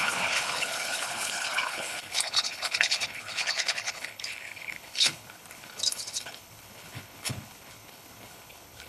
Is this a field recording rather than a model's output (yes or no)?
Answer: no